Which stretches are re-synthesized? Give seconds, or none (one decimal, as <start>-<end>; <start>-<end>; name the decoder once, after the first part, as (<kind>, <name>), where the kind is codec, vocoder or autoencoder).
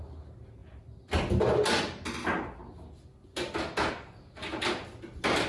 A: none